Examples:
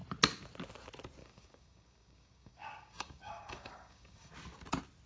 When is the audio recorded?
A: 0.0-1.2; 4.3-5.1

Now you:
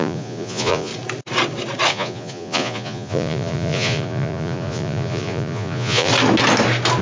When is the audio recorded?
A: 0.9-1.9; 6.1-7.0

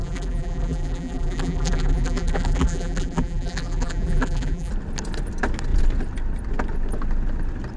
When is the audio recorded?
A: 4.7-7.8

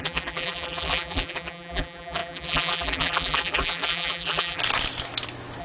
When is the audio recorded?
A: 4.6-5.6

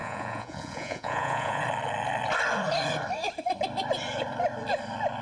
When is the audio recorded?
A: 1.6-5.2